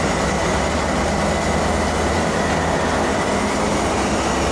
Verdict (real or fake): real